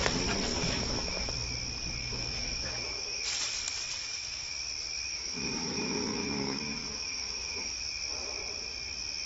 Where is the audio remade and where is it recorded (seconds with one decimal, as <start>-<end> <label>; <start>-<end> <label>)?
0.0-0.5 recorded; 0.5-1.3 remade; 1.3-2.0 recorded; 2.0-3.2 remade; 3.2-4.0 recorded; 4.0-4.5 remade; 4.5-5.1 recorded; 5.1-7.8 remade; 7.8-9.3 recorded